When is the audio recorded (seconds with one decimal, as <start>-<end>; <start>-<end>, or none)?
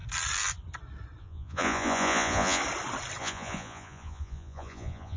0.0-1.2; 2.6-3.2